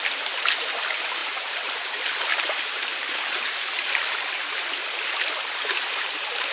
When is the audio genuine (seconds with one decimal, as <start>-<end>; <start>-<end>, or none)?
0.0-1.2; 1.8-2.3; 3.6-6.5